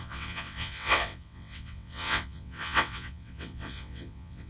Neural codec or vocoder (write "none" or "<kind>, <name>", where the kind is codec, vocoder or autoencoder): vocoder, WaveNeXt